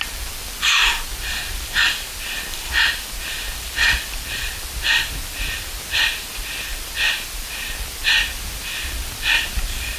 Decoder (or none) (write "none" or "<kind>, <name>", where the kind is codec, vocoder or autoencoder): vocoder, BigVGAN v2